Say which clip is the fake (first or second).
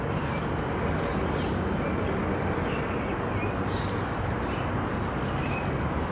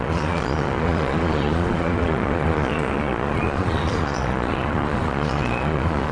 second